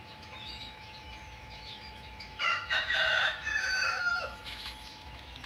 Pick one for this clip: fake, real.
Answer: fake